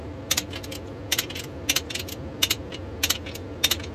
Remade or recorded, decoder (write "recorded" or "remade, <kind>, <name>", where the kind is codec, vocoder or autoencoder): recorded